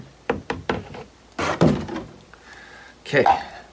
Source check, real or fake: fake